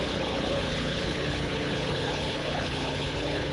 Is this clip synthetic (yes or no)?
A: yes